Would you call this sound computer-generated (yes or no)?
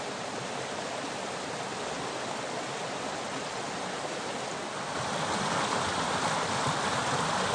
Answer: no